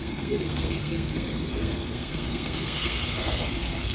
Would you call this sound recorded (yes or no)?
no